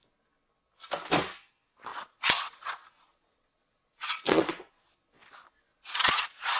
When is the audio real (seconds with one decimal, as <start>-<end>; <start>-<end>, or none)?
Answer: 0.0-1.9; 4.9-5.7